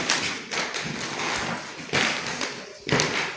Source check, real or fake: real